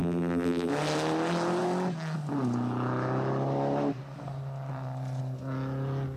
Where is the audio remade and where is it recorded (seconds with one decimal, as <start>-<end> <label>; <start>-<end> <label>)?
0.0-0.7 remade; 0.7-6.2 recorded